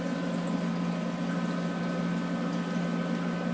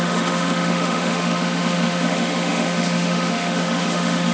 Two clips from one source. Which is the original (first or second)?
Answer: first